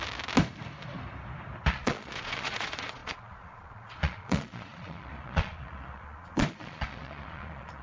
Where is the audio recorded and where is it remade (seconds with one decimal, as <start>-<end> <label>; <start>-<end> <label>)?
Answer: 0.0-1.7 recorded; 1.7-7.8 remade